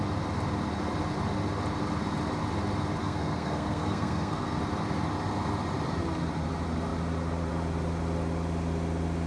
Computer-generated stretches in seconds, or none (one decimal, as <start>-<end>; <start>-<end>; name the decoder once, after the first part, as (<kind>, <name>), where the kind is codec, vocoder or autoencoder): 3.0-4.6 (codec, SNAC)